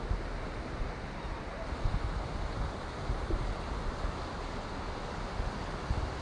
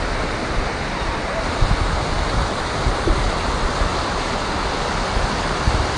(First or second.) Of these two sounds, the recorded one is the first